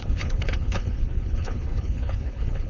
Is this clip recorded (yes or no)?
no